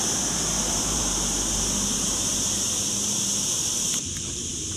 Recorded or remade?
remade